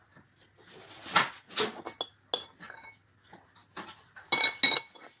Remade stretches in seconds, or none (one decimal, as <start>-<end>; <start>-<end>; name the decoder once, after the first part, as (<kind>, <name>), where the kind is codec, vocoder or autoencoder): none